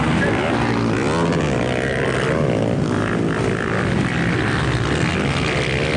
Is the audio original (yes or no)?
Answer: yes